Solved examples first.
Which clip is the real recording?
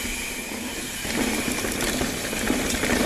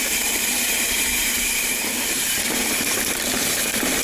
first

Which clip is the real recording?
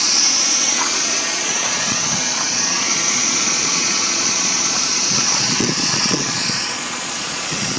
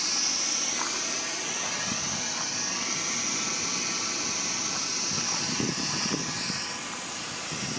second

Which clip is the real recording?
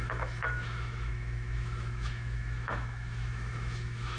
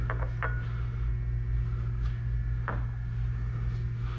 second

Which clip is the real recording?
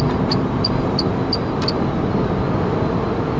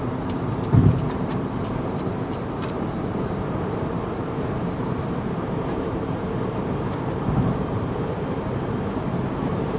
first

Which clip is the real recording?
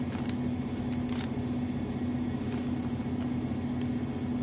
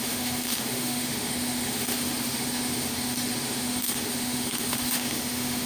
first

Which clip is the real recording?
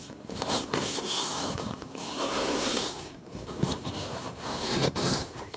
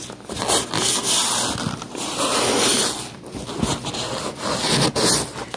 second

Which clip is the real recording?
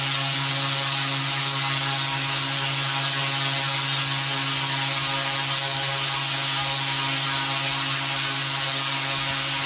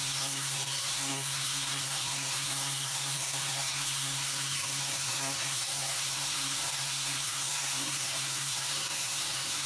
first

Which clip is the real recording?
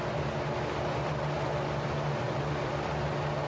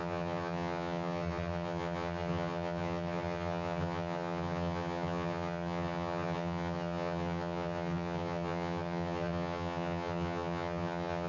first